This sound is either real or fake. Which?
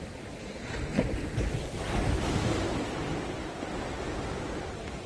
real